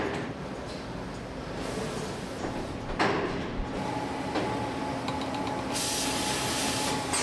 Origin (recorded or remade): recorded